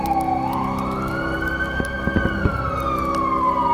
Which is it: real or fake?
real